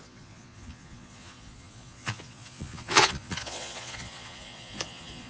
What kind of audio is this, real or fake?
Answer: fake